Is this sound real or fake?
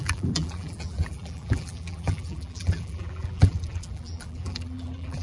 fake